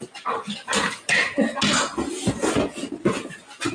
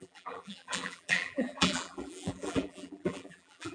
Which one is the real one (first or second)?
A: first